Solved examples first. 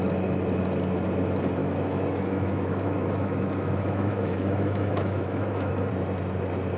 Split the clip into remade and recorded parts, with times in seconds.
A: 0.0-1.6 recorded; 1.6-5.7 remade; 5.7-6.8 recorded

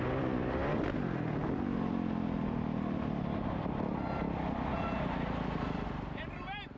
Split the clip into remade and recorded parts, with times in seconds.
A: 0.0-6.8 recorded

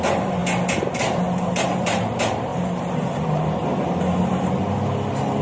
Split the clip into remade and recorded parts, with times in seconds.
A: 0.0-0.4 remade; 0.4-1.7 recorded; 1.7-2.5 remade; 2.5-5.4 recorded

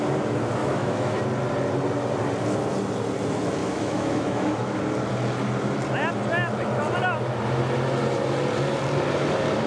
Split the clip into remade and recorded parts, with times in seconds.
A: 0.0-0.6 recorded; 0.6-1.2 remade; 1.2-3.6 recorded; 3.6-4.8 remade; 4.8-9.7 recorded

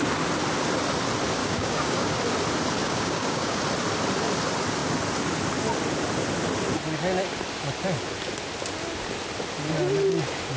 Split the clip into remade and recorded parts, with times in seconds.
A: 0.0-1.4 recorded; 1.4-2.2 remade; 2.2-2.8 recorded; 2.8-3.6 remade; 3.6-10.6 recorded

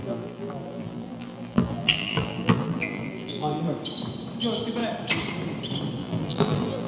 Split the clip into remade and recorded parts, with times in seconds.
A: 0.0-3.6 remade; 3.6-6.0 recorded; 6.0-6.9 remade

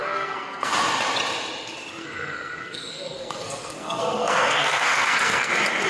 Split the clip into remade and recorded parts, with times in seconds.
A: 0.0-0.7 remade; 0.7-2.0 recorded; 2.0-5.5 remade; 5.5-5.9 recorded